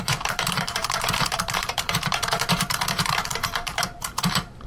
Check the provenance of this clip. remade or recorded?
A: remade